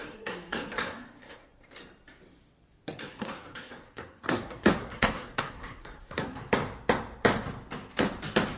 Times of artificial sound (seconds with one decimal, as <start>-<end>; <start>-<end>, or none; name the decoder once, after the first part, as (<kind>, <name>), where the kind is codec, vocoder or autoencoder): 0.0-1.5 (codec, SNAC); 3.0-6.4